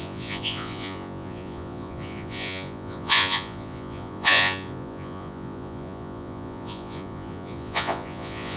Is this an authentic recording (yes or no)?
no